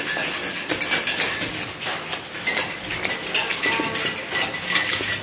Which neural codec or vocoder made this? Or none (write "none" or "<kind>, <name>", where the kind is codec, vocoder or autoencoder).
none